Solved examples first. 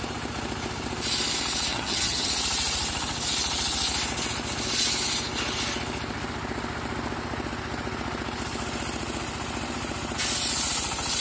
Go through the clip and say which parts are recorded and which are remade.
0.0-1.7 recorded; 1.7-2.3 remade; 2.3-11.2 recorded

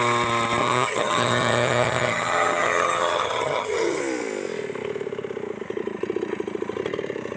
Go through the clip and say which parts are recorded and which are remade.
0.0-0.6 recorded; 0.6-4.0 remade; 4.0-7.4 recorded

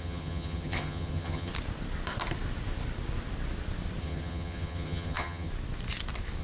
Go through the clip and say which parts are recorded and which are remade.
0.0-1.5 remade; 1.5-4.0 recorded; 4.0-5.5 remade; 5.5-6.4 recorded

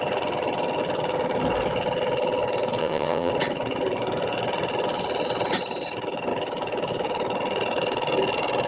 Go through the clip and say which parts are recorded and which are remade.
0.0-2.8 recorded; 2.8-3.3 remade; 3.3-8.7 recorded

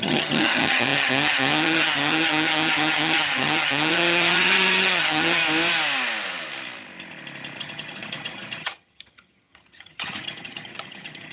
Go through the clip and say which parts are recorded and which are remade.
0.0-5.4 remade; 5.4-7.6 recorded; 7.6-11.3 remade

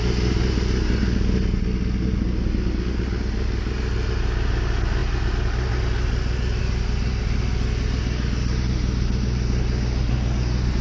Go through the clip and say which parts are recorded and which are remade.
0.0-10.8 recorded